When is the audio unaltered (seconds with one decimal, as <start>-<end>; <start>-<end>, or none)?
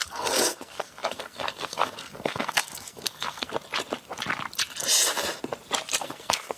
3.5-6.0